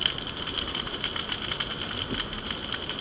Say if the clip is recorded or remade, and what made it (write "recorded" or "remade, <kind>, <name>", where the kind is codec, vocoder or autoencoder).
recorded